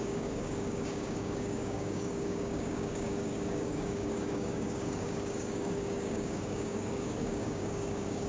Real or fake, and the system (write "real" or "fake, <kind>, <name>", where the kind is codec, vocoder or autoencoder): fake, codec, DAC